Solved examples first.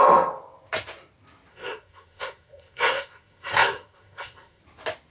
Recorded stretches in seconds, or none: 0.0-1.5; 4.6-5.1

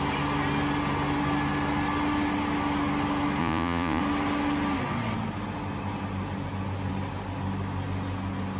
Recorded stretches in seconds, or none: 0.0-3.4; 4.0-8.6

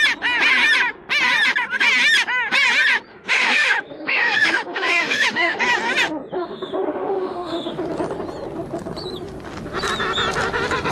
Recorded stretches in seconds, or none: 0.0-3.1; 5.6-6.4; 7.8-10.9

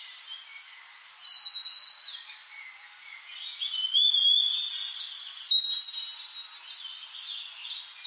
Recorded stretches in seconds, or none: 0.0-8.1